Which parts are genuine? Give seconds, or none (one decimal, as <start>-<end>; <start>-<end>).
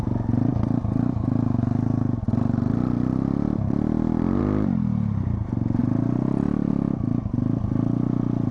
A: 0.0-8.5